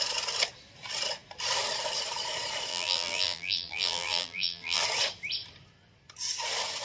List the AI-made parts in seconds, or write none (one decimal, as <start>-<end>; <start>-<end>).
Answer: 2.7-4.8